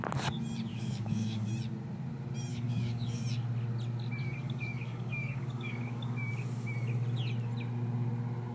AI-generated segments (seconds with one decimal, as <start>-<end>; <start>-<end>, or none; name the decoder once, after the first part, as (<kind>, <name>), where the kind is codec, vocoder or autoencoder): 0.7-1.5 (codec, DAC); 2.5-3.2; 4.2-6.3